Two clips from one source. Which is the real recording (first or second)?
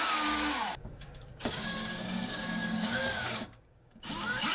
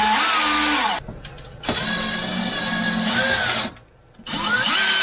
second